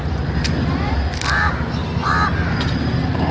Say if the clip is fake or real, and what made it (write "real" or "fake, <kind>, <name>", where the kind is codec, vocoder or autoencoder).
real